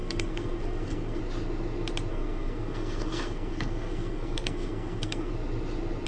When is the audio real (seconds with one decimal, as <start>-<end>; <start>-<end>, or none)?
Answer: 1.2-2.1; 5.3-6.1